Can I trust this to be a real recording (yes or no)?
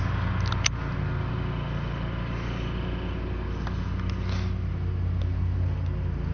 yes